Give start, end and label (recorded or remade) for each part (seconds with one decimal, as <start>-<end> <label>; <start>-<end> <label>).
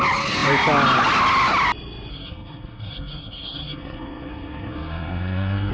0.0-2.1 recorded; 2.1-5.7 remade